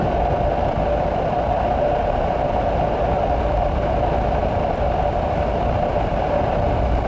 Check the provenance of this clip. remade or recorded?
recorded